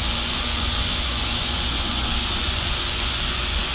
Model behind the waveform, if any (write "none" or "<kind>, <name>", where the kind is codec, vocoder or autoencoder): vocoder, Vocos